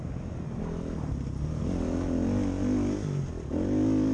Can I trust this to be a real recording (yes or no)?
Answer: yes